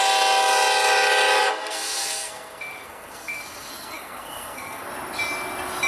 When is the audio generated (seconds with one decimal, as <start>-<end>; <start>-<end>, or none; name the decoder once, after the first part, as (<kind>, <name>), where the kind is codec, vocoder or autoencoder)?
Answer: 1.4-4.9 (codec, SNAC)